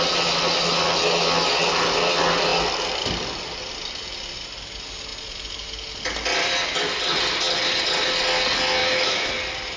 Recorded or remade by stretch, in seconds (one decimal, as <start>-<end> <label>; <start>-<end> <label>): 0.0-8.8 recorded; 8.8-9.3 remade; 9.3-9.8 recorded